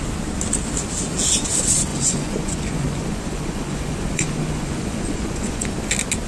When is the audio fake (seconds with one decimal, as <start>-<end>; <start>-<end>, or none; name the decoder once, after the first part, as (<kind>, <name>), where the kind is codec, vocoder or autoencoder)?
1.9-5.7 (vocoder, Vocos)